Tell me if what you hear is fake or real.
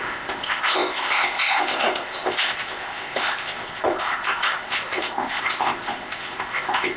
fake